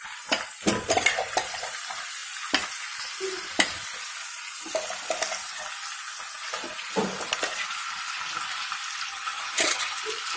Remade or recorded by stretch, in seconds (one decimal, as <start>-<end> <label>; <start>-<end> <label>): 0.0-9.1 recorded; 9.1-10.0 remade; 10.0-10.4 recorded